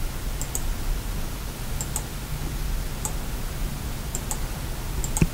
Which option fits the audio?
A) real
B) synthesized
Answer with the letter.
A